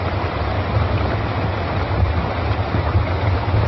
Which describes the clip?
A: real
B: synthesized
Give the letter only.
A